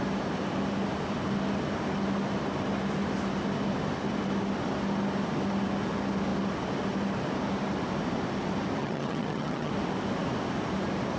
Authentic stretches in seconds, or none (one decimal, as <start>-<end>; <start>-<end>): 0.0-8.8; 9.7-11.2